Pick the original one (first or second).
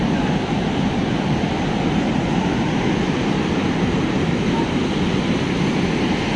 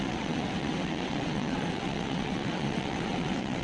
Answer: first